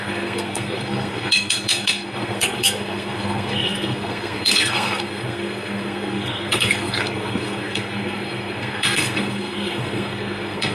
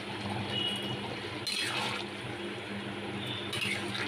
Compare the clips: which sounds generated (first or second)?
first